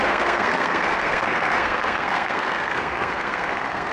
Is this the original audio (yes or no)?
no